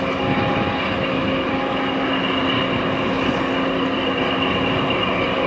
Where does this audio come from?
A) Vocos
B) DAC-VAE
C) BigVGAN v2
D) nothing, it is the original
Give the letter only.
D